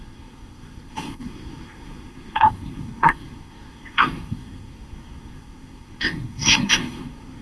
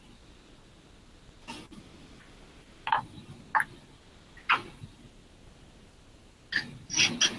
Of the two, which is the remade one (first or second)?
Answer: first